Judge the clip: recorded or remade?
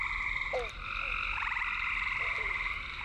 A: recorded